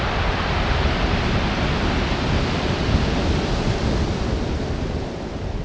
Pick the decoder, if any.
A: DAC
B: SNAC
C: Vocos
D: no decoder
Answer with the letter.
D